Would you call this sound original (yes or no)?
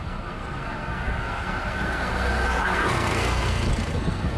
no